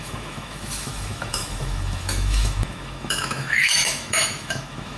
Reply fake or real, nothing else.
fake